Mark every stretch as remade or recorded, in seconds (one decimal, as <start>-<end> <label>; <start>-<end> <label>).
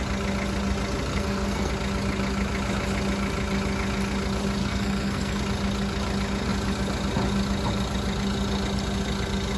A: 0.0-1.1 recorded; 1.1-1.7 remade; 1.7-4.6 recorded; 4.6-5.4 remade; 5.4-9.6 recorded